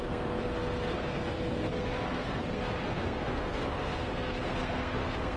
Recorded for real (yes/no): no